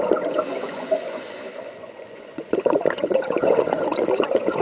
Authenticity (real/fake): fake